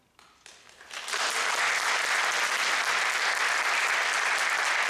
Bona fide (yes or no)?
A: yes